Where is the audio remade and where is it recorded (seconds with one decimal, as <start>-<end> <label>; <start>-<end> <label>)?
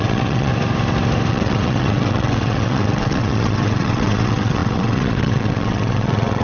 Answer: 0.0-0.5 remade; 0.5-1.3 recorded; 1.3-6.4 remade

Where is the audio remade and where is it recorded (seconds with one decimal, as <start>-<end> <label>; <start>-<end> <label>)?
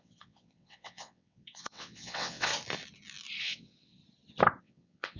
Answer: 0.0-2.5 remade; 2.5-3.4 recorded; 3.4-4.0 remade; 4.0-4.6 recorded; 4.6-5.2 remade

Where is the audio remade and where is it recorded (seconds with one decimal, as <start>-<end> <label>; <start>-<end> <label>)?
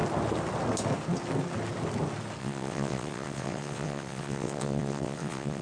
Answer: 0.0-2.4 recorded; 2.4-5.6 remade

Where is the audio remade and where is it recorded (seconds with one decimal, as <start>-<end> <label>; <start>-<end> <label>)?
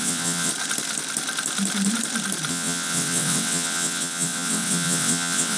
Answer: 0.0-0.5 remade; 0.5-2.5 recorded; 2.5-5.6 remade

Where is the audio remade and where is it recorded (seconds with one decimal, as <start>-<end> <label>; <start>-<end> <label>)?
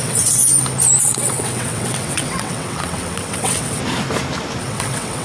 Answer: 0.0-0.4 remade; 0.4-1.0 recorded; 1.0-3.8 remade; 3.8-4.6 recorded; 4.6-5.2 remade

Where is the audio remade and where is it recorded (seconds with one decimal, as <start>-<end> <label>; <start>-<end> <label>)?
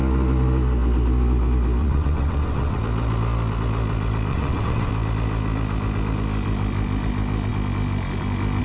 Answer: 0.0-1.8 recorded; 1.8-2.8 remade; 2.8-4.3 recorded; 4.3-4.9 remade; 4.9-8.6 recorded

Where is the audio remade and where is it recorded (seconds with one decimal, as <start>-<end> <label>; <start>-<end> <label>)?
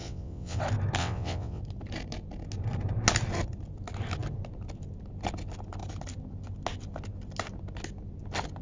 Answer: 0.0-0.6 remade; 0.6-1.0 recorded; 1.0-1.6 remade; 1.6-8.6 recorded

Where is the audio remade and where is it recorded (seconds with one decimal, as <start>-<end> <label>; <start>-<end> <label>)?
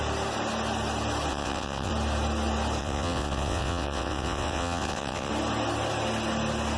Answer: 0.0-1.3 recorded; 1.3-1.9 remade; 1.9-2.8 recorded; 2.8-5.3 remade; 5.3-6.8 recorded